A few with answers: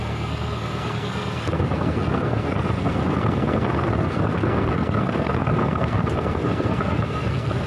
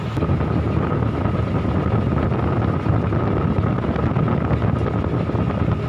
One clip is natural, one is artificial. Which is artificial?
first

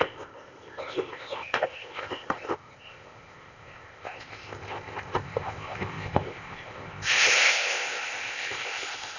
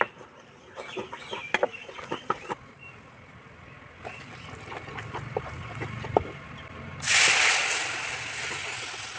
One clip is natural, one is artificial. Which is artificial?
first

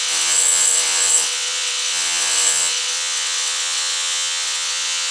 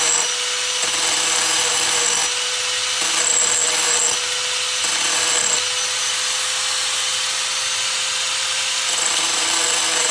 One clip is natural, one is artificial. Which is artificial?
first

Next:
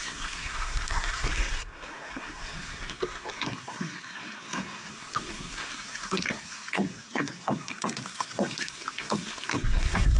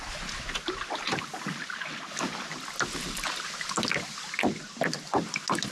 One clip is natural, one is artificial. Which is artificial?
first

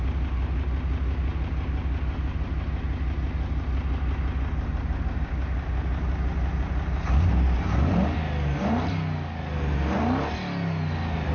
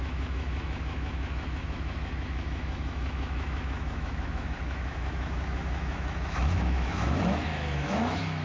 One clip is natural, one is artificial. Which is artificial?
second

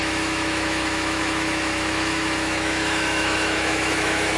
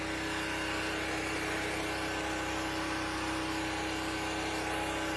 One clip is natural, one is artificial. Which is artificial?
first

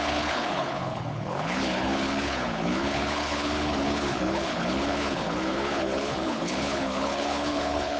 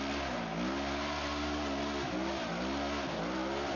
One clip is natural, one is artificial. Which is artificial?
first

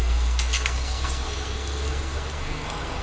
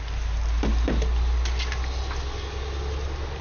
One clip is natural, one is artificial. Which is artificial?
first